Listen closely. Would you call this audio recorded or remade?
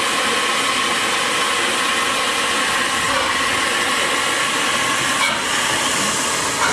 recorded